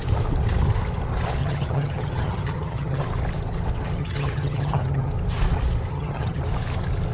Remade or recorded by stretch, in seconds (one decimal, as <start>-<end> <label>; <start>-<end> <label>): 0.0-1.4 recorded; 1.4-3.0 remade; 3.0-4.0 recorded; 4.0-5.1 remade; 5.1-5.9 recorded; 5.9-6.4 remade; 6.4-7.1 recorded